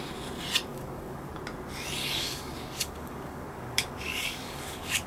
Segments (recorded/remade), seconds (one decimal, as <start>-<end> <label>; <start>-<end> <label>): 0.0-0.7 recorded; 0.7-1.3 remade; 1.3-2.0 recorded; 2.0-5.1 remade